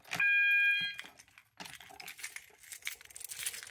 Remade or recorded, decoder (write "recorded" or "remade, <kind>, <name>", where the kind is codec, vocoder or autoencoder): recorded